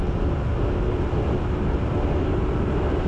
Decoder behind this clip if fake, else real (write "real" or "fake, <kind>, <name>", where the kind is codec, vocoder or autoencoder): real